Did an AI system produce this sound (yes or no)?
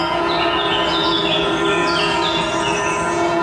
yes